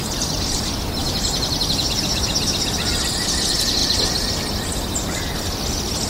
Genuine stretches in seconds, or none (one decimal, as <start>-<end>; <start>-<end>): 1.0-3.0; 3.8-6.1